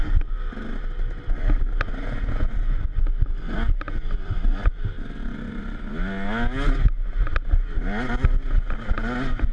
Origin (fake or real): real